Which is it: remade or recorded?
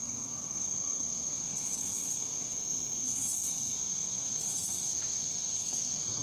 remade